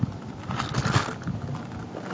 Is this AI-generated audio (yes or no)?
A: no